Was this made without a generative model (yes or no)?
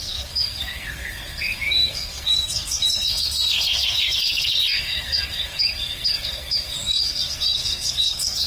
no